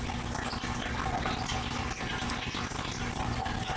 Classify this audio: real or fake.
real